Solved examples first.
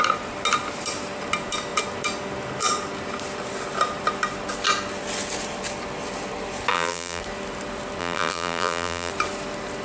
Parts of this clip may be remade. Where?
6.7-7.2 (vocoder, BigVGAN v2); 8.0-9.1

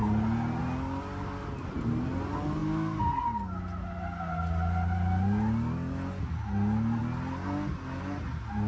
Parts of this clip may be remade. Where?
none

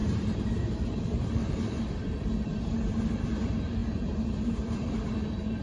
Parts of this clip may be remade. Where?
0.0-5.6 (vocoder, BigVGAN v2)

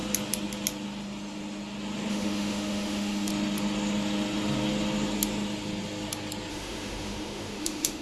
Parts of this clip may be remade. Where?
2.1-3.3 (autoencoder, DAC-VAE); 6.5-8.0

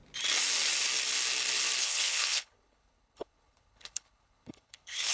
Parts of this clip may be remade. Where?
1.8-5.1 (codec, HILCodec)

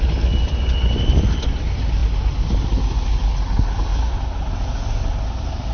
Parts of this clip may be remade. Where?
none